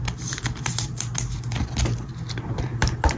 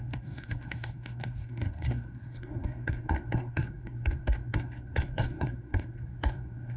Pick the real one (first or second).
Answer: first